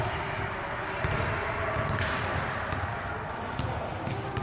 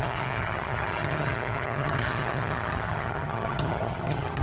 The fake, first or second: second